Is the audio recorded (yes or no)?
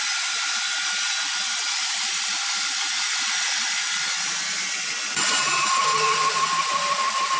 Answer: yes